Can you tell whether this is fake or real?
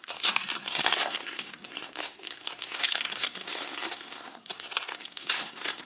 fake